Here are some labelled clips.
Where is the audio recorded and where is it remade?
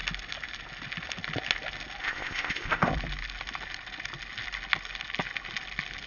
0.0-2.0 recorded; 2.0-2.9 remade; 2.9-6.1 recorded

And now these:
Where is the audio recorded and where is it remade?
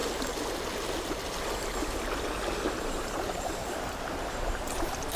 0.0-2.8 recorded; 2.8-3.6 remade; 3.6-4.3 recorded; 4.3-5.2 remade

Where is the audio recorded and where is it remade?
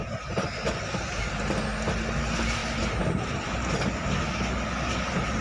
0.0-2.6 recorded; 2.6-4.1 remade; 4.1-5.4 recorded